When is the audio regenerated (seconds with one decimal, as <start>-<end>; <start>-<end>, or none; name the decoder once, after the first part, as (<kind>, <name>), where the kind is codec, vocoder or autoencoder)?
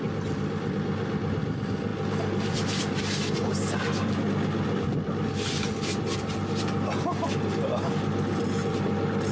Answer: none